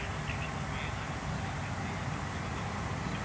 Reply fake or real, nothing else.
real